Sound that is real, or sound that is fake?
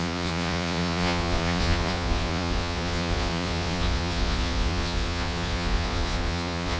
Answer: fake